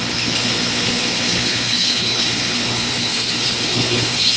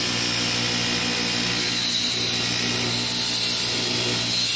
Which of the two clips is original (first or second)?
second